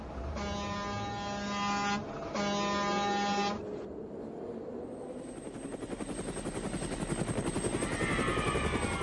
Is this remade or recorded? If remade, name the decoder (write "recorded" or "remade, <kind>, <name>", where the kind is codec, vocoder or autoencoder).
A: recorded